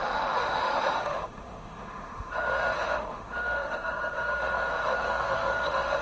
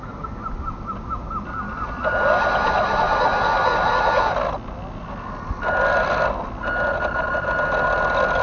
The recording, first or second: second